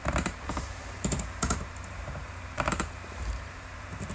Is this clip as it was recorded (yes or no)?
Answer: no